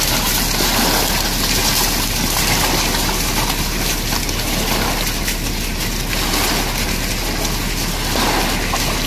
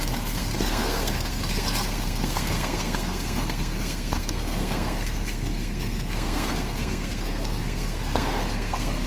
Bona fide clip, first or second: first